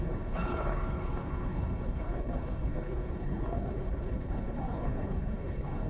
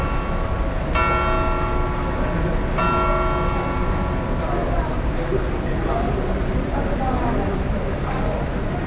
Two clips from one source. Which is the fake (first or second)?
first